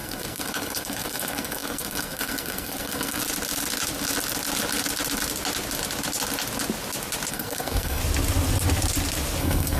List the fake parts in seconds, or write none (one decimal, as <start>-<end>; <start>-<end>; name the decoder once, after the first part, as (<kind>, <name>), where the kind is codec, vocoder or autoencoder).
0.0-3.2 (codec, SNAC); 7.3-8.0; 9.4-9.8